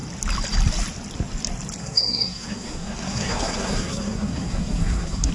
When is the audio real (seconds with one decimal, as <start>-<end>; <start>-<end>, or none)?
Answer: 0.0-1.8